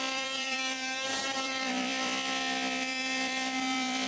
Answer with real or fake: fake